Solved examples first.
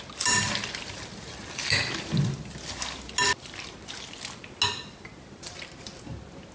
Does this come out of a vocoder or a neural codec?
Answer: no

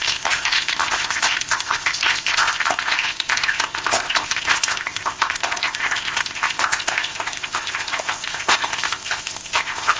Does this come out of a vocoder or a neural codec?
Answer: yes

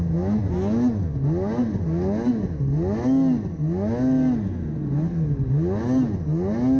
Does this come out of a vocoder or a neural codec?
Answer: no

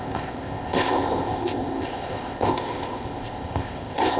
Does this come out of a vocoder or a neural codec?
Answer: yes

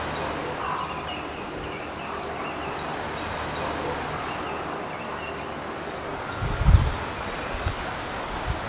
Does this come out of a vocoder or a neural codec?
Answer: no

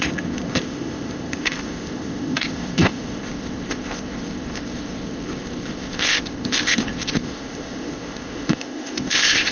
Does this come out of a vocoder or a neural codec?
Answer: yes